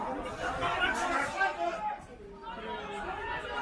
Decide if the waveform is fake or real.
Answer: real